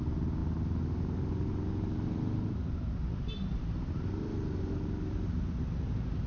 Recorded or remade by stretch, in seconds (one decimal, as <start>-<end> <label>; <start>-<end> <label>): 0.0-6.3 recorded